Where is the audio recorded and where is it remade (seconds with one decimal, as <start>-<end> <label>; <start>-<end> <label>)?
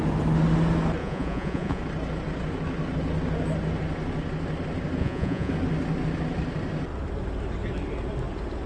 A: 0.0-1.0 recorded; 1.0-1.8 remade; 1.8-5.0 recorded; 5.0-5.5 remade; 5.5-8.7 recorded